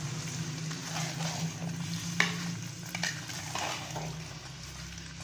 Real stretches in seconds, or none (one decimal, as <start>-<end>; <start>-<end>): 0.0-5.2